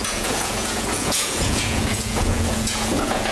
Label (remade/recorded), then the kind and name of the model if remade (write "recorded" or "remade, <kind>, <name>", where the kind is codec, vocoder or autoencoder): remade, vocoder, Vocos